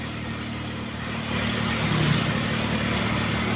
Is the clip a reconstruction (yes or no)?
no